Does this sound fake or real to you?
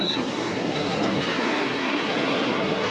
fake